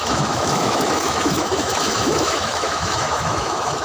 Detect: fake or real fake